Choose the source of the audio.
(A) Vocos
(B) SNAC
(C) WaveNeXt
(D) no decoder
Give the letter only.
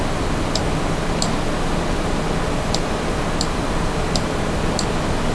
D